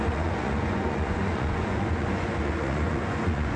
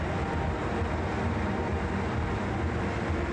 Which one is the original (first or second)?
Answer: second